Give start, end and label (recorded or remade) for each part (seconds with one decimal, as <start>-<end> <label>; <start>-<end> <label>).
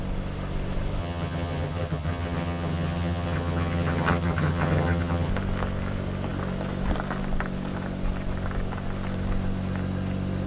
0.0-1.0 recorded; 1.0-5.3 remade; 5.3-10.5 recorded